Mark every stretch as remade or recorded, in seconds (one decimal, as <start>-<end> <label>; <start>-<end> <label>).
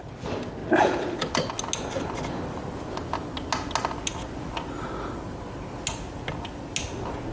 0.0-7.3 recorded